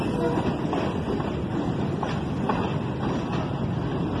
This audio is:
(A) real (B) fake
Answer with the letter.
A